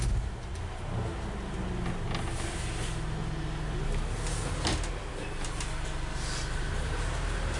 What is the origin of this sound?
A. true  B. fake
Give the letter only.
A